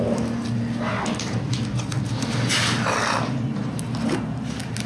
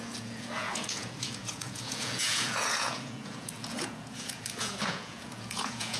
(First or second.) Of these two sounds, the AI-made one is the second